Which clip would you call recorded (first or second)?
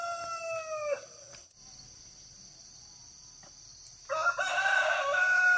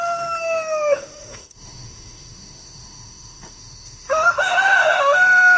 first